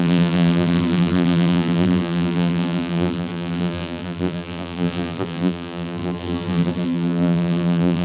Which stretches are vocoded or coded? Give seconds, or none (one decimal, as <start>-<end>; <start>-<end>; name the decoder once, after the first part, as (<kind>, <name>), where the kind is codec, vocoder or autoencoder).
0.0-8.0 (vocoder, BigVGAN v2)